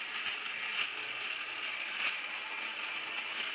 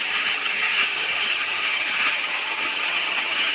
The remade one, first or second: second